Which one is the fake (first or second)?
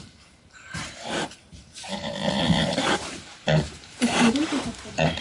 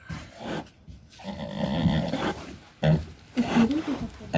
first